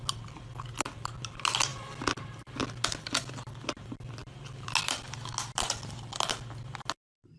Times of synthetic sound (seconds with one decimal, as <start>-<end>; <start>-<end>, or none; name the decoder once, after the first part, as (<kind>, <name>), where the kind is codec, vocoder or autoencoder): none